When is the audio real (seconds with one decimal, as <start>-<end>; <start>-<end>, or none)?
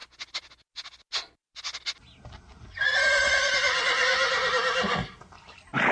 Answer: 0.0-5.9